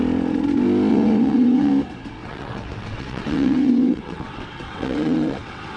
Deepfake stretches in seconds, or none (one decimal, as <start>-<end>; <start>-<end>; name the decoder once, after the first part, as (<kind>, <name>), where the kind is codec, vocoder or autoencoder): 0.9-1.7 (vocoder, WaveNeXt); 2.2-5.8